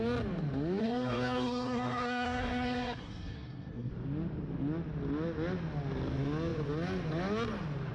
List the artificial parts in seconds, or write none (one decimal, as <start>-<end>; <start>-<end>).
0.8-3.9